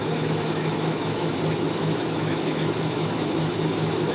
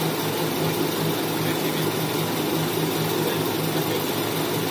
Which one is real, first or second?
second